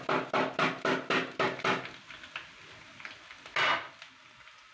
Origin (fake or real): real